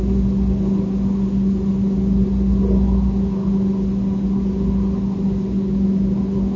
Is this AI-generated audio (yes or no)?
no